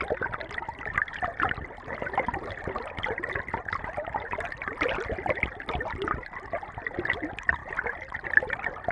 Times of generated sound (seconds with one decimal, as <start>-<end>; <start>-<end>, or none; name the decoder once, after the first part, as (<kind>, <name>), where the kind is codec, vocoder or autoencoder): 7.6-8.2 (vocoder, BigVGAN v2)